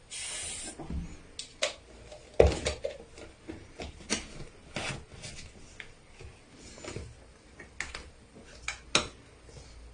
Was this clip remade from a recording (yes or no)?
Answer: no